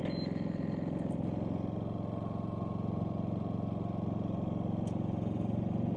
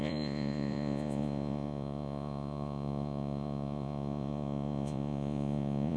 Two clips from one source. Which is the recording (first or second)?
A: first